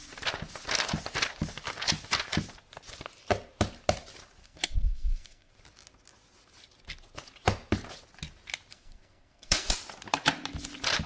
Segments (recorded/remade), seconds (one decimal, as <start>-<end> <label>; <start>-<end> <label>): 0.0-4.4 recorded; 4.4-5.5 remade; 5.5-8.7 recorded; 8.7-9.7 remade; 9.7-11.1 recorded